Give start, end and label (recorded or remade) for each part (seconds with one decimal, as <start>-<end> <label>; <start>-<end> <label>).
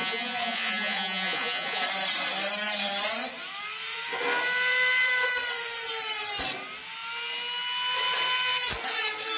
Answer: 0.0-1.8 remade; 1.8-9.4 recorded